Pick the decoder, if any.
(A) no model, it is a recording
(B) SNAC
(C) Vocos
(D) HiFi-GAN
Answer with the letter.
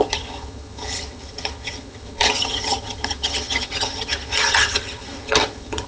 D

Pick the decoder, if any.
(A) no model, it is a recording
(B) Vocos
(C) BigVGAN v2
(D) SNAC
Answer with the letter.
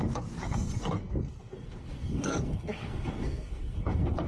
D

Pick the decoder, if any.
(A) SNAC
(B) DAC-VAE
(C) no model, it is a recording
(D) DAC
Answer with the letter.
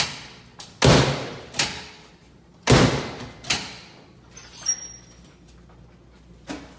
C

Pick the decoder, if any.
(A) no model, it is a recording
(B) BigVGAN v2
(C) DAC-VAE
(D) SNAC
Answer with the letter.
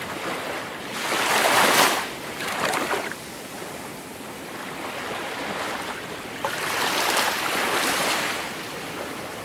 B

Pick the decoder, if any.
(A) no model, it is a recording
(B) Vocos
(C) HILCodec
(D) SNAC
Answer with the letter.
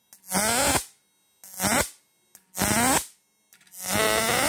A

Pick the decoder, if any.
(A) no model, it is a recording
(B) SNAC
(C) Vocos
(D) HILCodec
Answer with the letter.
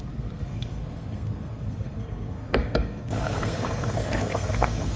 B